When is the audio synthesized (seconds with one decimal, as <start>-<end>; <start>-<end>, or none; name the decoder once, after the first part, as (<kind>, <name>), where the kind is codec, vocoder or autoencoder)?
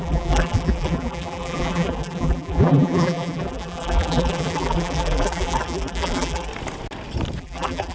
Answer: 0.0-6.5 (vocoder, BigVGAN v2); 7.4-7.9